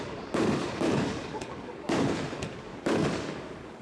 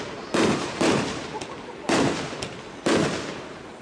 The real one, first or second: second